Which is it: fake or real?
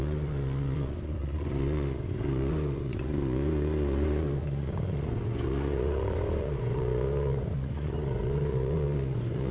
fake